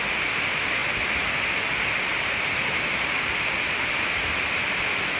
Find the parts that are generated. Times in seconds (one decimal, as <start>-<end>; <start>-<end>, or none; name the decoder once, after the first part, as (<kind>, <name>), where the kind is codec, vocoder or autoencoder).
none